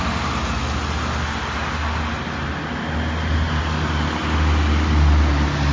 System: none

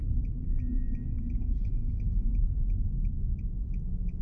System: none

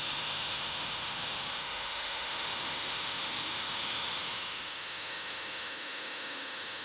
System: autoencoder, DAC-VAE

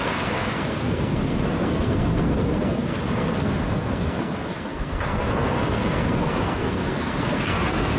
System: codec, SNAC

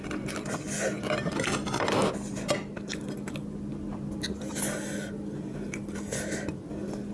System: none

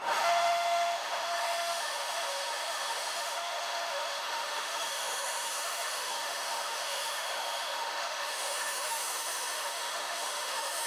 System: autoencoder, DAC-VAE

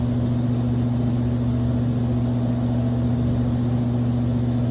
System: none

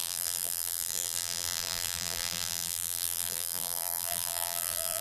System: vocoder, BigVGAN v2